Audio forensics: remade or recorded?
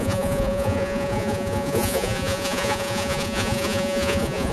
remade